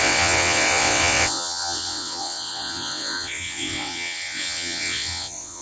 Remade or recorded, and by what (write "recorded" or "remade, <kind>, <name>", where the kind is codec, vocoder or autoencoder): remade, vocoder, WaveNeXt